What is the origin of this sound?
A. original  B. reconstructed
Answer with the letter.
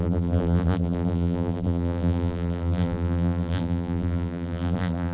B